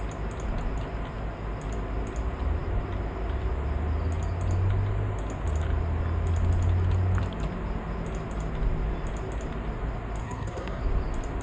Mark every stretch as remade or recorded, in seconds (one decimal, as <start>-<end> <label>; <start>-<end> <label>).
0.0-10.2 recorded; 10.2-10.8 remade; 10.8-11.4 recorded